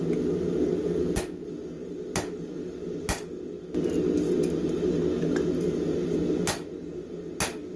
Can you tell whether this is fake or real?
real